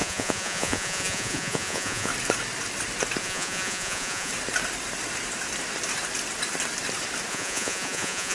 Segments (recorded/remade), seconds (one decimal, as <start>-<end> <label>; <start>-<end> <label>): 0.0-2.1 remade; 2.1-3.2 recorded; 3.2-4.3 remade; 4.3-7.3 recorded; 7.3-8.3 remade